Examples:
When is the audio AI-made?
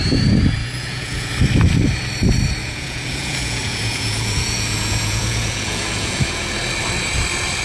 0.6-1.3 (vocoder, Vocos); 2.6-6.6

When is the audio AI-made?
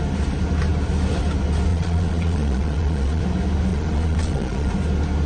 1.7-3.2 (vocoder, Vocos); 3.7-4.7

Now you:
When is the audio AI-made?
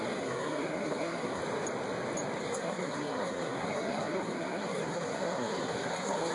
0.0-1.4 (codec, SNAC); 2.4-6.3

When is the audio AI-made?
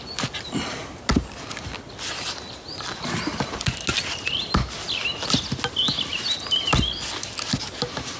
none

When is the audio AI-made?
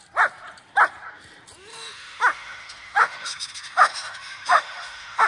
1.7-5.3 (autoencoder, DAC-VAE)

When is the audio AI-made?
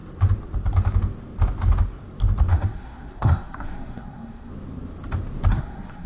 2.5-4.5 (codec, SNAC); 5.5-6.1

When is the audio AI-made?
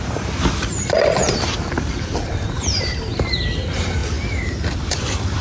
0.0-4.0 (vocoder, BigVGAN v2); 4.7-5.4